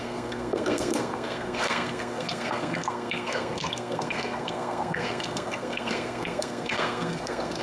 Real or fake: fake